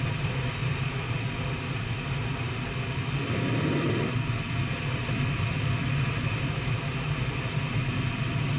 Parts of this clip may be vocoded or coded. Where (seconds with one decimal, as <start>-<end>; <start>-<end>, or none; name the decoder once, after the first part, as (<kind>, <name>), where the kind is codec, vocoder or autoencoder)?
none